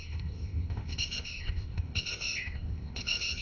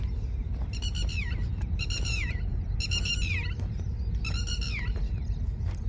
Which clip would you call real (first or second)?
second